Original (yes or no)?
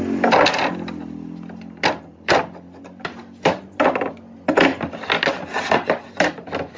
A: yes